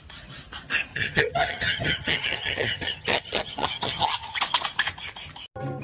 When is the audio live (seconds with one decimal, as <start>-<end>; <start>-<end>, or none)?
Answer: 0.0-0.9; 4.4-5.8